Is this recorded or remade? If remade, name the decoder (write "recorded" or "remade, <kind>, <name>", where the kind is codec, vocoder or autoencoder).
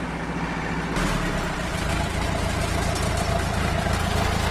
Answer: recorded